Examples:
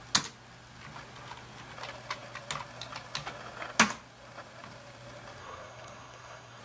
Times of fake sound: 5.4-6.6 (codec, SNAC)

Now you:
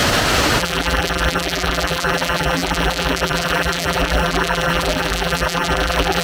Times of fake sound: 0.6-6.2 (vocoder, BigVGAN v2)

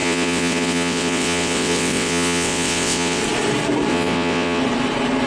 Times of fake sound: 0.0-3.2 (vocoder, WaveNeXt); 3.9-4.6

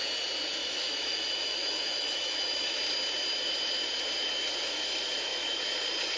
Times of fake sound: 0.6-2.8 (autoencoder, DAC-VAE)

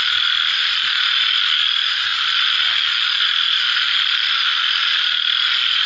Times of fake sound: none